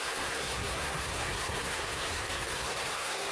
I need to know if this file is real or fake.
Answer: fake